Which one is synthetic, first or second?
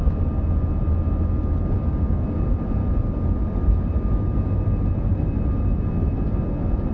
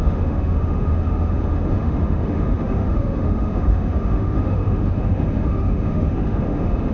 second